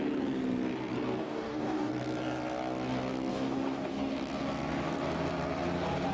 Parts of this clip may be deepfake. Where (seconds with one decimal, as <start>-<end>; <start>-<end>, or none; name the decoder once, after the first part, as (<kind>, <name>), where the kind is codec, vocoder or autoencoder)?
1.2-1.9 (codec, DAC); 3.3-4.1